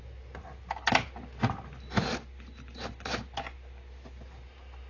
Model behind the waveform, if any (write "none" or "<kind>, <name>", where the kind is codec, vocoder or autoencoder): none